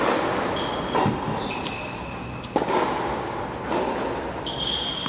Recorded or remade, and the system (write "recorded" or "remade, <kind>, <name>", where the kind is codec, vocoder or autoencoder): recorded